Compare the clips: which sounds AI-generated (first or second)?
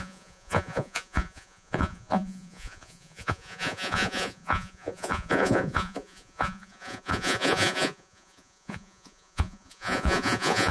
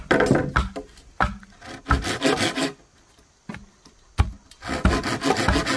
first